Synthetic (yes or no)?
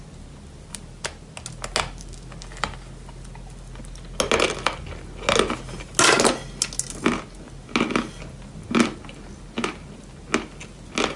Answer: no